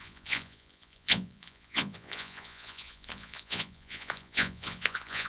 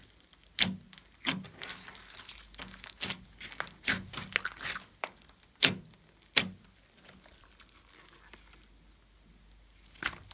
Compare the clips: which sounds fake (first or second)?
first